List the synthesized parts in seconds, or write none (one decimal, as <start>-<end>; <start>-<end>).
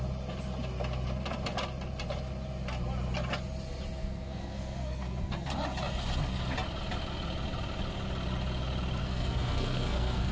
4.0-5.5; 9.0-10.3